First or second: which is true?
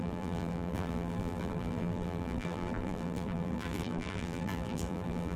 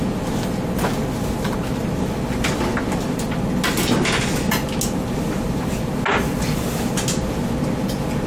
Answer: second